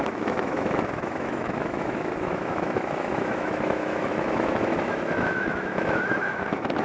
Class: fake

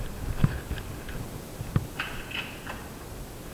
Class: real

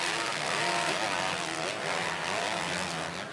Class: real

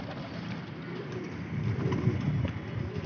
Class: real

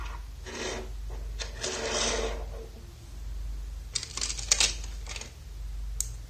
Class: real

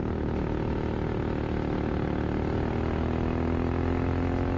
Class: real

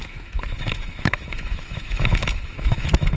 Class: fake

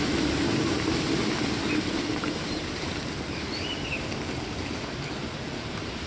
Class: real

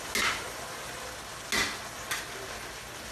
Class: real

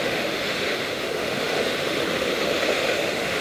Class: fake